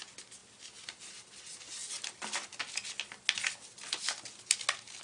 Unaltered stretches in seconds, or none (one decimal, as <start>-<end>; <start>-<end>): 0.0-5.0